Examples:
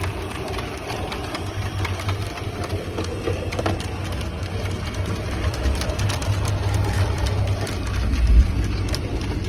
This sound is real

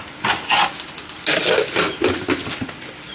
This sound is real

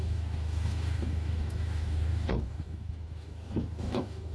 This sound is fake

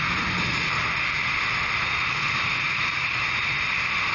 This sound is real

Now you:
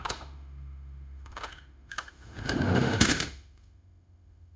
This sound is fake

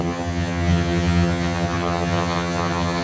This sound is fake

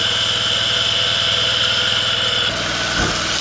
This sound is real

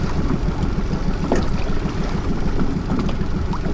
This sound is real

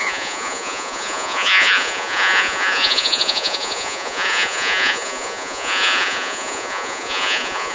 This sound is fake